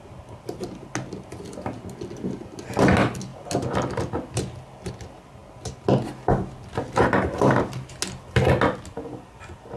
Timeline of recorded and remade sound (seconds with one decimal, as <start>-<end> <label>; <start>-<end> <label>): 0.0-9.8 recorded